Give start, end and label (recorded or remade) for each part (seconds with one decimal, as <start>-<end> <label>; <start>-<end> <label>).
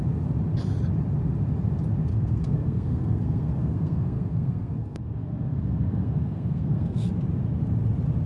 0.0-2.1 recorded; 2.1-7.1 remade; 7.1-8.3 recorded